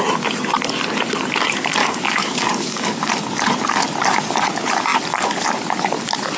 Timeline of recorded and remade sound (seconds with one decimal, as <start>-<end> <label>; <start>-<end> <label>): 0.0-1.8 recorded; 1.8-3.1 remade; 3.1-6.4 recorded